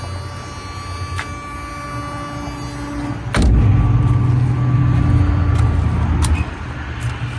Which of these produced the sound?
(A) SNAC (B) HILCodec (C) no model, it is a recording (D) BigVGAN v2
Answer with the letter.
C